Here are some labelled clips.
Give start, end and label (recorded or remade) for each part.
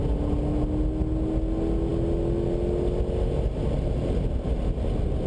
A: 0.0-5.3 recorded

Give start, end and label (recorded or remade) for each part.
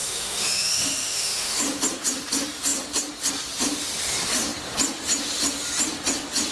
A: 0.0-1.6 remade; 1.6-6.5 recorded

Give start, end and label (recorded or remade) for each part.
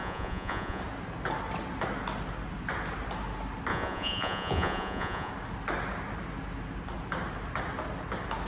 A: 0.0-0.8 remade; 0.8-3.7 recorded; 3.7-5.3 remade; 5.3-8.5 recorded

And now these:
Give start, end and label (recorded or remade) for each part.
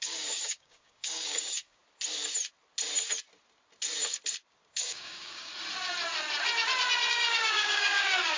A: 0.0-1.8 remade; 1.8-4.7 recorded; 4.7-5.5 remade; 5.5-7.1 recorded; 7.1-8.4 remade